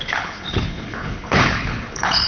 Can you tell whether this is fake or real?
fake